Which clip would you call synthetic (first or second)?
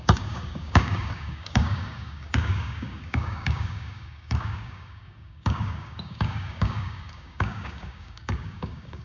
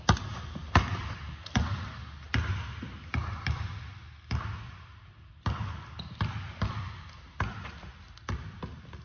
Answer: first